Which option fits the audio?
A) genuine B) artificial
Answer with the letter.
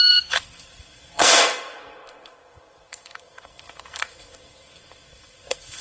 B